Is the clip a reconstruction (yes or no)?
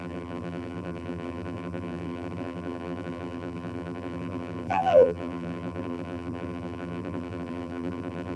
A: yes